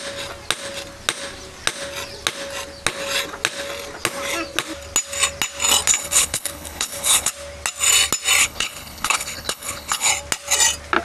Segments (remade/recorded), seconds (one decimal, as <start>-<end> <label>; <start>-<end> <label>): 0.0-5.9 recorded; 5.9-7.3 remade; 7.3-8.4 recorded; 8.4-10.1 remade; 10.1-11.0 recorded